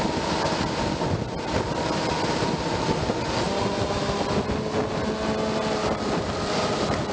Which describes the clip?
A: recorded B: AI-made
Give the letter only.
A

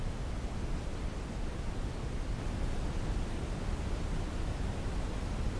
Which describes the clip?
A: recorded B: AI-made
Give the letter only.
A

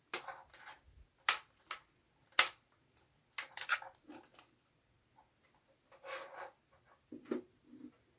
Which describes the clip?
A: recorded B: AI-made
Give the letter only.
A